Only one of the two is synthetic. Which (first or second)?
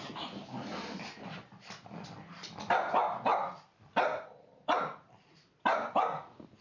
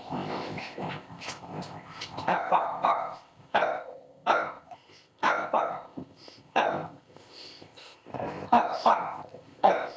second